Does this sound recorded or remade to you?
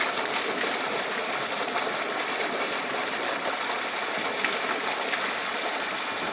recorded